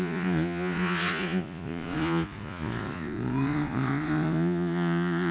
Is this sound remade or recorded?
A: remade